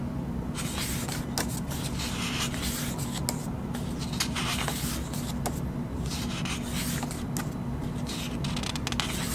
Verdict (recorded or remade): recorded